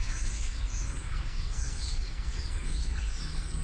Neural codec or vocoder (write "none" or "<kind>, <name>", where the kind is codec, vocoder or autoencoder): codec, SNAC